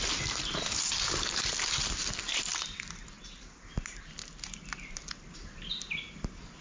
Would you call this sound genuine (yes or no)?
yes